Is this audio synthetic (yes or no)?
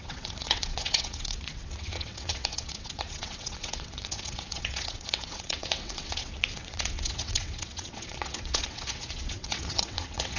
yes